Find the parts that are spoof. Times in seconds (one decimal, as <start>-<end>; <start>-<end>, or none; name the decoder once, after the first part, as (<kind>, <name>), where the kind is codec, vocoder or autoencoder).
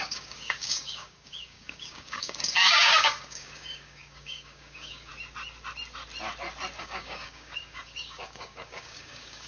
0.0-5.1 (codec, DAC); 6.8-9.5